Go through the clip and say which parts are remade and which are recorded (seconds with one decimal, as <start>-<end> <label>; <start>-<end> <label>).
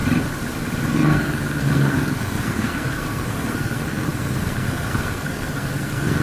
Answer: 0.0-0.9 recorded; 0.9-6.2 remade